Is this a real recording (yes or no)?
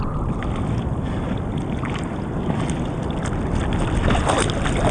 yes